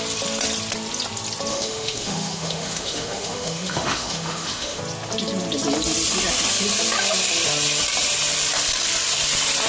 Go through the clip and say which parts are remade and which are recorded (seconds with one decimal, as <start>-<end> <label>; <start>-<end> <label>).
0.0-1.5 recorded; 1.5-4.8 remade; 4.8-9.7 recorded